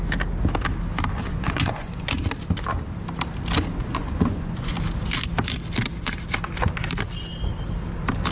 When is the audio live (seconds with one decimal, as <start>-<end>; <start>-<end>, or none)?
0.0-1.3; 2.1-3.8; 4.7-8.3